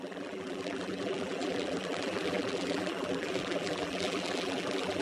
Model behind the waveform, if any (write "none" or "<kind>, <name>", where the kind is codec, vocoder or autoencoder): vocoder, BigVGAN v2